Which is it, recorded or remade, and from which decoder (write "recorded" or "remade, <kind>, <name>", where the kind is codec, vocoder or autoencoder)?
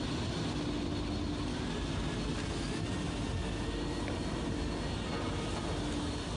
recorded